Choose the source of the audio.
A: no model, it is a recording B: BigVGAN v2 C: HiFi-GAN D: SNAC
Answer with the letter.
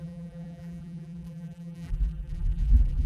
B